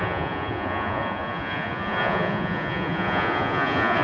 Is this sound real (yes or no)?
no